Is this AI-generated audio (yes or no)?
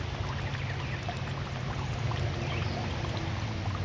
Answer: no